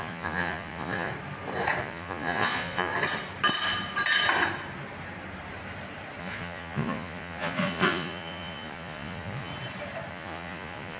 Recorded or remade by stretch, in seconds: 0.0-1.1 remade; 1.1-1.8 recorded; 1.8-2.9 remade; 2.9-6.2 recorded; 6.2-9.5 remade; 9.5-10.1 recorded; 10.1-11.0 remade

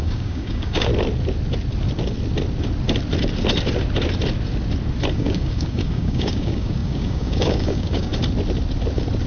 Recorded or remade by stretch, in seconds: 0.0-0.9 remade; 0.9-5.1 recorded; 5.1-8.1 remade; 8.1-9.3 recorded

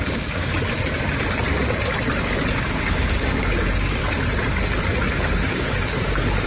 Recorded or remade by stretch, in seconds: 0.0-0.5 remade; 0.5-2.6 recorded; 2.6-4.0 remade; 4.0-5.1 recorded; 5.1-6.5 remade